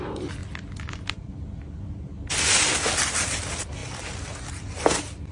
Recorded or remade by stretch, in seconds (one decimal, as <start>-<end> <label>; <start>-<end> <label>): 0.0-5.3 recorded